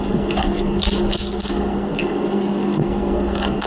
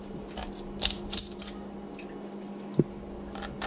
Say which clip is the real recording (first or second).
second